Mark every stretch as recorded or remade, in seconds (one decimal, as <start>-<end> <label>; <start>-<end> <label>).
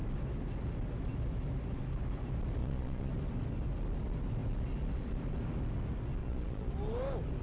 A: 0.0-2.6 recorded; 2.6-3.1 remade; 3.1-6.2 recorded; 6.2-6.7 remade; 6.7-7.4 recorded